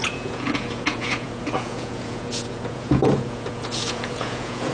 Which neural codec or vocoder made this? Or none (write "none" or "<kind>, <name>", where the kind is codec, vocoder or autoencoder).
vocoder, Vocos